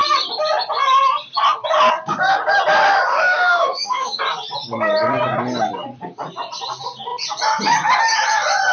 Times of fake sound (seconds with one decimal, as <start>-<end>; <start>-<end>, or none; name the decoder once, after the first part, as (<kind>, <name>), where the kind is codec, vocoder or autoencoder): 3.1-4.2 (autoencoder, DAC-VAE)